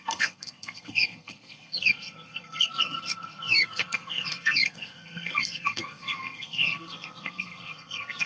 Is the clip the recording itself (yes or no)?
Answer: no